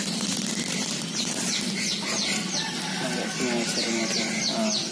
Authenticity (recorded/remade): recorded